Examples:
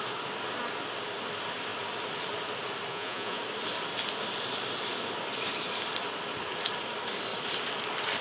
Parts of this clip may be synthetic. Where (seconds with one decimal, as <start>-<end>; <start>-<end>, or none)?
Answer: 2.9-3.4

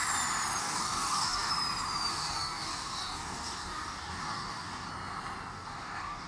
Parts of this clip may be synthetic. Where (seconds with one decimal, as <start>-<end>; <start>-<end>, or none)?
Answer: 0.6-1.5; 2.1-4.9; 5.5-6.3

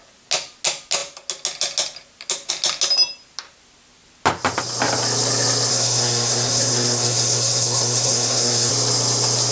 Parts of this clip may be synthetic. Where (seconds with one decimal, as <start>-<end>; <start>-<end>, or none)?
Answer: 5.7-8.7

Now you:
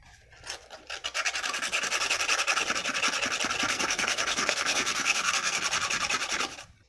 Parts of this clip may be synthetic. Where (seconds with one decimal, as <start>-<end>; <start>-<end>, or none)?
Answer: 3.7-5.6

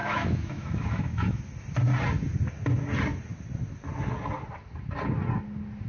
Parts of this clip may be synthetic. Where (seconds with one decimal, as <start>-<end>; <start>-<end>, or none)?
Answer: 0.0-1.4

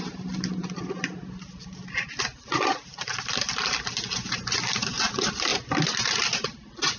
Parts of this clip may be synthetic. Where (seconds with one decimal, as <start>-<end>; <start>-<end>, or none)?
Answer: none